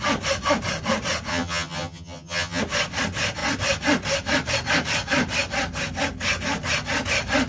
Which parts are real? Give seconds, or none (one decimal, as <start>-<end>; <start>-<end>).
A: 0.0-1.3; 2.6-7.5